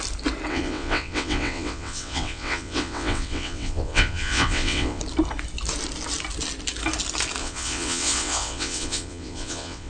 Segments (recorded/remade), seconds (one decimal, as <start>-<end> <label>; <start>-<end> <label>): 0.0-0.5 recorded; 0.5-5.0 remade; 5.0-7.4 recorded; 7.4-9.9 remade